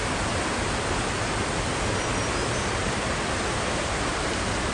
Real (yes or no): yes